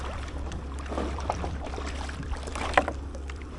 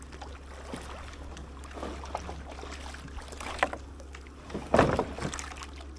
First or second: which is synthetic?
first